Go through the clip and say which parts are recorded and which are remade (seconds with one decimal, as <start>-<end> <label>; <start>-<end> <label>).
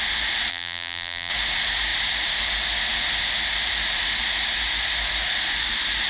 0.0-0.5 recorded; 0.5-1.3 remade; 1.3-6.1 recorded